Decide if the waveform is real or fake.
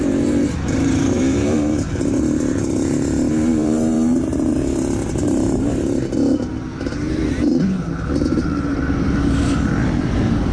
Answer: fake